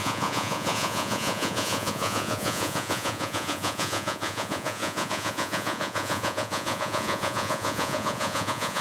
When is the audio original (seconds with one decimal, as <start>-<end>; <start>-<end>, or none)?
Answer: none